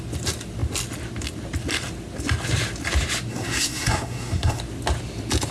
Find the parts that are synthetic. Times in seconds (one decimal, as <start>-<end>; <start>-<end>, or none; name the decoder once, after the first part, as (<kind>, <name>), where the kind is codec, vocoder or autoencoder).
3.3-4.6 (codec, SNAC)